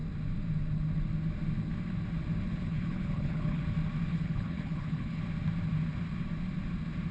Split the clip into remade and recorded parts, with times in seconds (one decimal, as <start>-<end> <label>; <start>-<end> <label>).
0.0-2.5 recorded; 2.5-3.6 remade; 3.6-4.1 recorded; 4.1-5.2 remade; 5.2-7.1 recorded